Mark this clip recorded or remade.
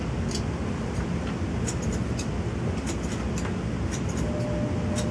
recorded